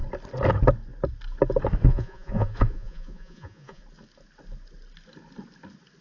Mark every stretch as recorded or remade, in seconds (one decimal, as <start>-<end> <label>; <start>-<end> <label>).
0.0-1.9 recorded; 1.9-3.8 remade; 3.8-6.0 recorded